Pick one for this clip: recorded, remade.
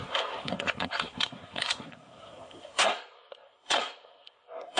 remade